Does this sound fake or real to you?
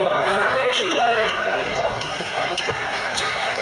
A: fake